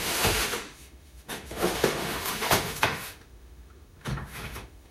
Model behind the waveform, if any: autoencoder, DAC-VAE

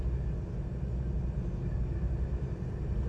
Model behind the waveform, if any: none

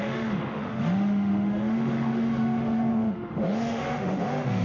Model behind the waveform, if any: autoencoder, DAC-VAE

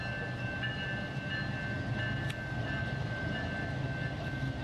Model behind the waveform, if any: none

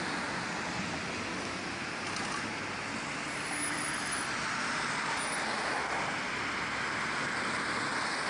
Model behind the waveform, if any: none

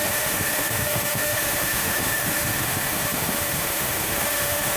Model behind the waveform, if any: autoencoder, DAC-VAE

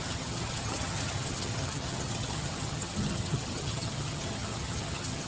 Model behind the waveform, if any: vocoder, HiFi-GAN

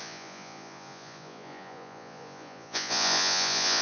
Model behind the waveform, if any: vocoder, Vocos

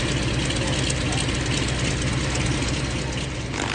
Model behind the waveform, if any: none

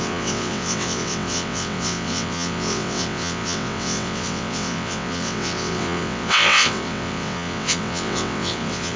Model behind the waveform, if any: vocoder, WaveNeXt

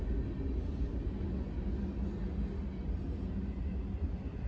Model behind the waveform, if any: none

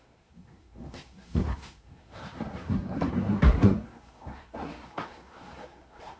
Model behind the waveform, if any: codec, SNAC